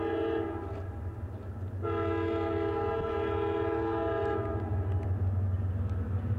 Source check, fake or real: real